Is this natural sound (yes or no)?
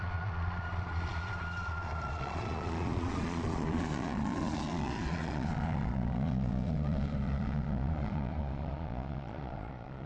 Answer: no